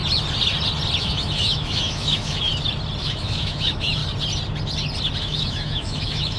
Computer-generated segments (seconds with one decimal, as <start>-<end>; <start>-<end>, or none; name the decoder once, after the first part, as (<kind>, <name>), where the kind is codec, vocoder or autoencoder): 1.0-2.5 (autoencoder, DAC-VAE); 3.0-4.0; 5.2-6.4